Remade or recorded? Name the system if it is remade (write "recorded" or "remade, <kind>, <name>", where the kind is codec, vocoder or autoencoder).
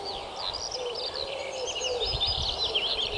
recorded